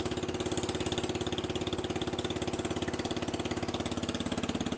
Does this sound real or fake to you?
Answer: real